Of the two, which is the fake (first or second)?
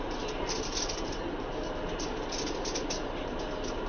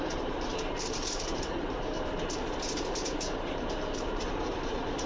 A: second